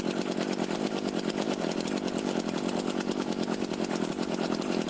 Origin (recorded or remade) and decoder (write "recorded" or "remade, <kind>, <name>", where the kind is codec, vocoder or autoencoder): recorded